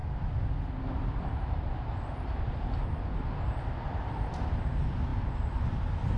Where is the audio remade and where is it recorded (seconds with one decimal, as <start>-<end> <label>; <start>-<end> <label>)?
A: 0.0-6.2 recorded